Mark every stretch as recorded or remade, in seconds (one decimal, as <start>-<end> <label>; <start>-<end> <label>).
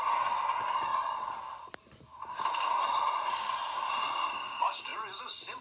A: 0.0-0.9 recorded; 0.9-4.3 remade; 4.3-4.9 recorded; 4.9-5.6 remade